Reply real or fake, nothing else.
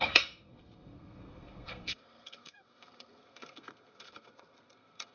fake